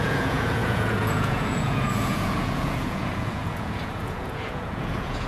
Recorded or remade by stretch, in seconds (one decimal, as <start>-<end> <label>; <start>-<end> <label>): 0.0-5.3 remade